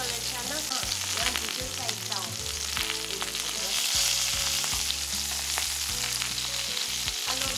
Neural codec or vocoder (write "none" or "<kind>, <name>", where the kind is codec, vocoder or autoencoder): none